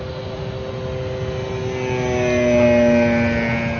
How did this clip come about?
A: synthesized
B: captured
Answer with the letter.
B